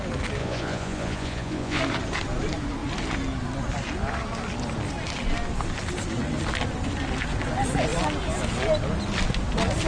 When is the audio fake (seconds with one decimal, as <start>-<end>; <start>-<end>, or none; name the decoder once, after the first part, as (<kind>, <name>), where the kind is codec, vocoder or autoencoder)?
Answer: 0.4-1.8 (vocoder, Vocos)